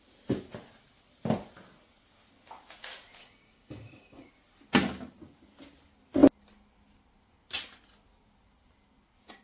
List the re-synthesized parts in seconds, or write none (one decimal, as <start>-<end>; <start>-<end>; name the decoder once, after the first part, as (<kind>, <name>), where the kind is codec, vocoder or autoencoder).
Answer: 3.2-4.3 (codec, DAC)